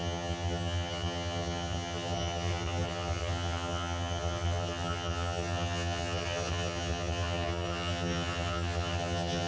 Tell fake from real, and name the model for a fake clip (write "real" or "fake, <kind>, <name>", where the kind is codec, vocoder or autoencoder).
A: fake, vocoder, HiFi-GAN